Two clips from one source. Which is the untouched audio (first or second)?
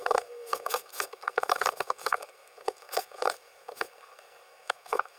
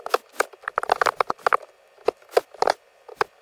second